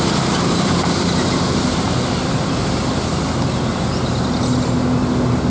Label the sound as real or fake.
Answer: real